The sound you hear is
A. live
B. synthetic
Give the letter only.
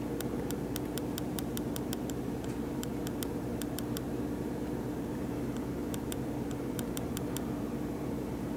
B